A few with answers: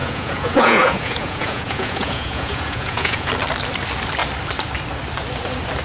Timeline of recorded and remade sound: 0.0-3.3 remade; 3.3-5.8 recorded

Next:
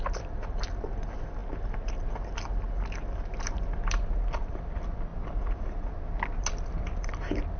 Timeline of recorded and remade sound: 0.0-1.4 remade; 1.4-3.5 recorded; 3.5-5.1 remade; 5.1-6.7 recorded; 6.7-7.6 remade

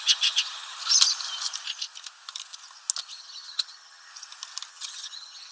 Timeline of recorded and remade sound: 0.0-0.8 remade; 0.8-3.2 recorded; 3.2-4.1 remade; 4.1-4.7 recorded; 4.7-5.5 remade